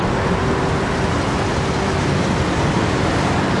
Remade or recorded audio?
recorded